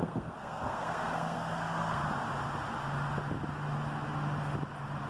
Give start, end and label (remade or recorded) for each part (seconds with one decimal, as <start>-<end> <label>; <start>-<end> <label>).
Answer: 0.0-2.0 remade; 2.0-5.1 recorded